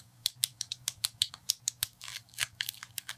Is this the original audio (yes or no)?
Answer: no